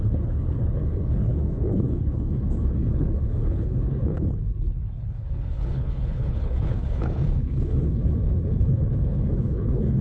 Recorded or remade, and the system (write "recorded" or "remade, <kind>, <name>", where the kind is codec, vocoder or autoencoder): remade, codec, HILCodec